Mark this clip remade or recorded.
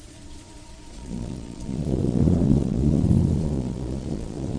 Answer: remade